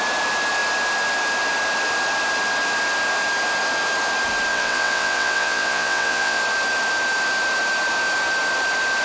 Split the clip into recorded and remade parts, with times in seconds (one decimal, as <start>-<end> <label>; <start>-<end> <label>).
0.0-4.5 recorded; 4.5-6.4 remade; 6.4-9.0 recorded